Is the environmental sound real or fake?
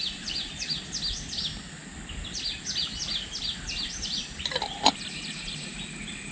real